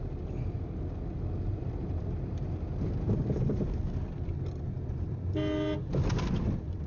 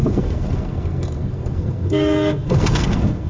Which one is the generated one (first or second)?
second